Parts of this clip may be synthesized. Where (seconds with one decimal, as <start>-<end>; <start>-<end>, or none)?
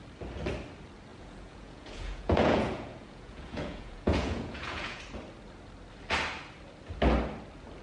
1.1-5.0